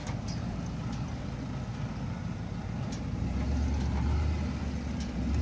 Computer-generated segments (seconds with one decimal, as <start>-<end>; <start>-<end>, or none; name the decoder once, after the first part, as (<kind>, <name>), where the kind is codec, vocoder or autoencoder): none